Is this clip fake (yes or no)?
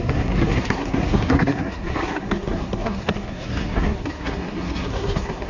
yes